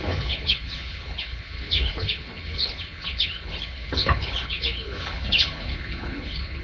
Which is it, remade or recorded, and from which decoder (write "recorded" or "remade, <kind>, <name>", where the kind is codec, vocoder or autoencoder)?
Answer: remade, codec, HILCodec